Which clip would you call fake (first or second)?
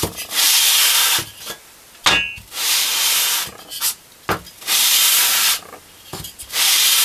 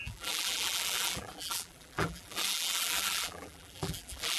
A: second